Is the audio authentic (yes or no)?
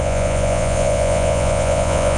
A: no